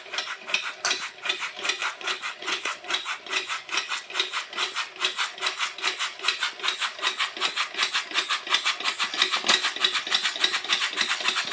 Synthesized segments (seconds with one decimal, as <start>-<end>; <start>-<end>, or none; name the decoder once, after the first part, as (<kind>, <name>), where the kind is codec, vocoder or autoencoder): 1.8-3.7 (vocoder, Vocos)